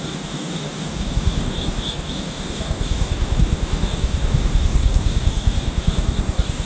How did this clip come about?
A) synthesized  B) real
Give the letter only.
A